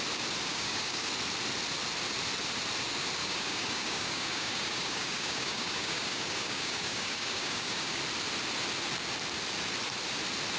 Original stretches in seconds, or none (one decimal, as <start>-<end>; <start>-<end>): 0.0-0.5; 1.1-3.2; 8.0-10.6